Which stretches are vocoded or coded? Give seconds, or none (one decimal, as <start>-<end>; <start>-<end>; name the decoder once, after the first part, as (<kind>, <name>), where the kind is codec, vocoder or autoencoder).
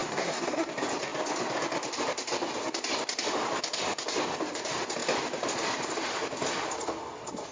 0.0-0.7 (codec, SNAC)